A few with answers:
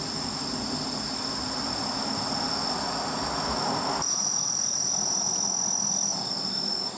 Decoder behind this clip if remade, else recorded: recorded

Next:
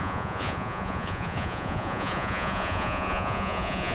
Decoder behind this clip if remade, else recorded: remade, vocoder, Vocos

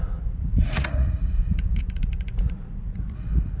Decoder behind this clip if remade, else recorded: remade, vocoder, Vocos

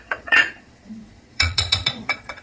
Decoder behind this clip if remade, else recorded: remade, vocoder, Vocos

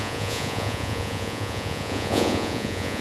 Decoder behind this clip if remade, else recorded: remade, vocoder, Vocos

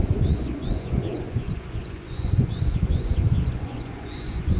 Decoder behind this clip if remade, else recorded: remade, vocoder, Vocos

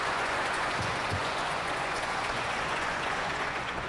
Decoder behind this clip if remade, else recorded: remade, vocoder, Vocos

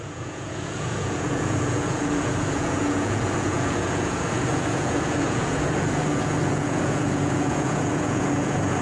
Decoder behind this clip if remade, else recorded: remade, vocoder, Vocos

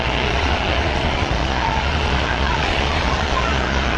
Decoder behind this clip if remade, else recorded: remade, vocoder, Vocos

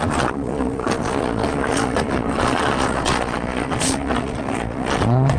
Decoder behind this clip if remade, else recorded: remade, vocoder, Vocos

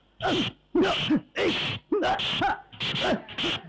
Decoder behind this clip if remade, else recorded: recorded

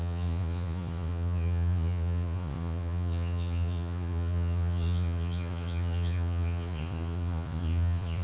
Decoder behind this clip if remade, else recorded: remade, vocoder, Vocos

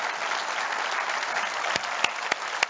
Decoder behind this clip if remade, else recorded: recorded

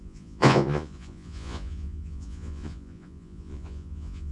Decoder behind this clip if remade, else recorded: remade, vocoder, Vocos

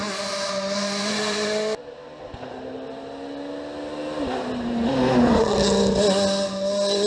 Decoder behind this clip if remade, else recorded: recorded